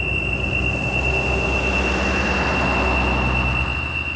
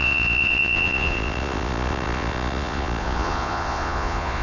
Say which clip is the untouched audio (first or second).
first